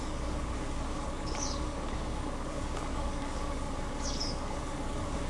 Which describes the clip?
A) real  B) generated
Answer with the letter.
B